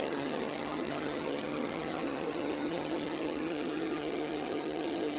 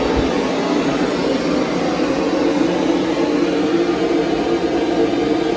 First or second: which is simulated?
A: first